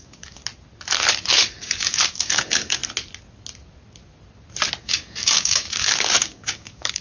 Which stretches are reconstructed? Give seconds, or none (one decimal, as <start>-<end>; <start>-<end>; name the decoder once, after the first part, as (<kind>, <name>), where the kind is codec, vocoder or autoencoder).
0.0-0.4 (codec, DAC); 1.3-2.8; 4.8-7.0